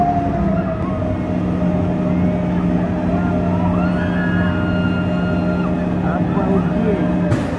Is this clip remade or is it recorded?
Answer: recorded